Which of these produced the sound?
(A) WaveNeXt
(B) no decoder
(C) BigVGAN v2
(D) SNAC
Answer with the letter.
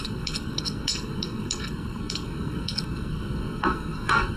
D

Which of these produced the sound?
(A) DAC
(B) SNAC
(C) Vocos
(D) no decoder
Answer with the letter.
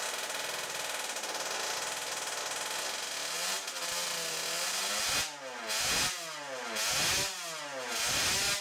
D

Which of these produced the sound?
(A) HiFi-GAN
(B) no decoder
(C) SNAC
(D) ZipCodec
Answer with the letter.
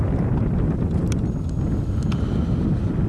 B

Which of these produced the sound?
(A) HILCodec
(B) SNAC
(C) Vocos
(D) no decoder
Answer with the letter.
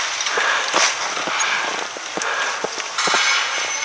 D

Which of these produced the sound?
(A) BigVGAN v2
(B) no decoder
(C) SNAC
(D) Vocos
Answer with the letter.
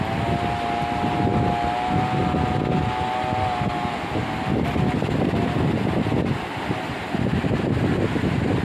B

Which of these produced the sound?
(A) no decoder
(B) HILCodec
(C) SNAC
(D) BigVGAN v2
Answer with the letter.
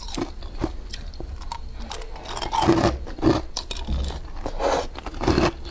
A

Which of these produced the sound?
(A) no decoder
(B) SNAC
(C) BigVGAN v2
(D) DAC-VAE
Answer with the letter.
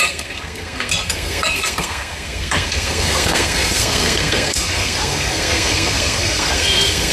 B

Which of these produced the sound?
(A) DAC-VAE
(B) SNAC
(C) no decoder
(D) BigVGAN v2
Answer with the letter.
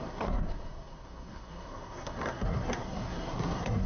B